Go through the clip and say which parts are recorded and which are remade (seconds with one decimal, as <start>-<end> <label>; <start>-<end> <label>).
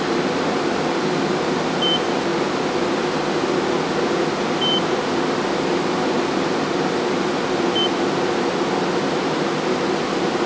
0.0-10.5 recorded